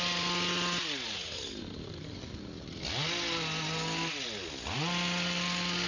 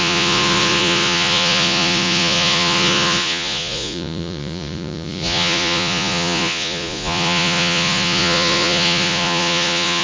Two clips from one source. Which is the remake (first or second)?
second